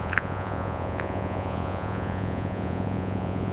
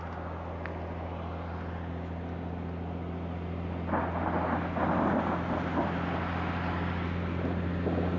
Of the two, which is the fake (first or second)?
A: first